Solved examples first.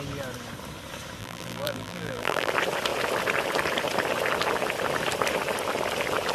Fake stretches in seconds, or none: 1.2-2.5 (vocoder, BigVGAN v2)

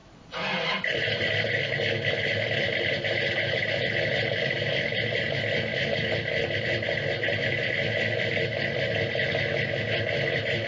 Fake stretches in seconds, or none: none